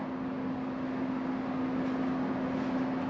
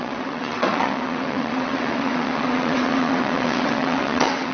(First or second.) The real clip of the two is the first